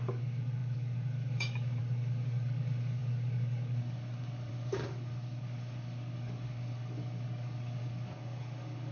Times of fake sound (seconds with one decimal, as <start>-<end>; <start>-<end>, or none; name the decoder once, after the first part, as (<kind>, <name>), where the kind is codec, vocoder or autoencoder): 0.0-8.9 (codec, DAC)